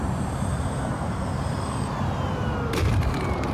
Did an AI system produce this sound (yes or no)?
yes